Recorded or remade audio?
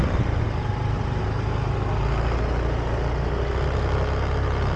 recorded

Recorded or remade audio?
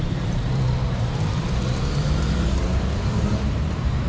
remade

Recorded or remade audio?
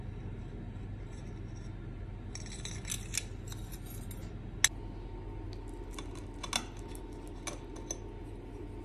recorded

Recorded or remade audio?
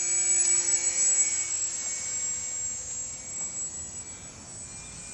recorded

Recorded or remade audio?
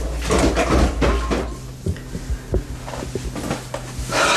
recorded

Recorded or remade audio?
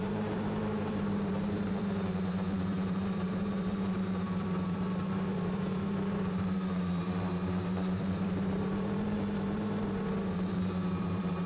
remade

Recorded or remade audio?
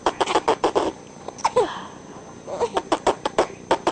remade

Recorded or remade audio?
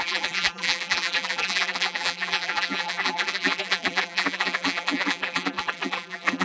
remade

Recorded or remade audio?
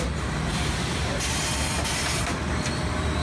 remade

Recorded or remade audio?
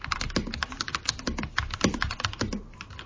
recorded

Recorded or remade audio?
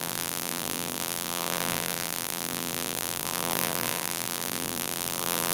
remade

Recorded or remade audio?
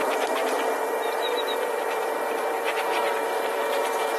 remade